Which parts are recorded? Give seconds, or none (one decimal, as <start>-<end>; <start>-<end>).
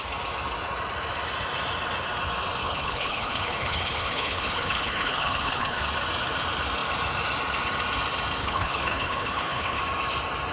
0.0-2.6; 5.8-8.4; 9.8-10.5